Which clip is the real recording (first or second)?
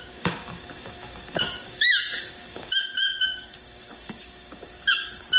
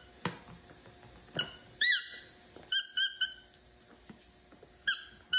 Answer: second